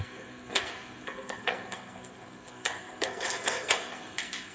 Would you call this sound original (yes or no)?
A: no